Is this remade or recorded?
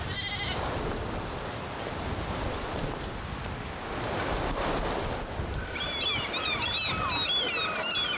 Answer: recorded